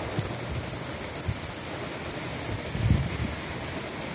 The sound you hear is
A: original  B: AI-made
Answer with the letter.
A